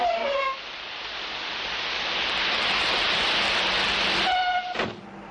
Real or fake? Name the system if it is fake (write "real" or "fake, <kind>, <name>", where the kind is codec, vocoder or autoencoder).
real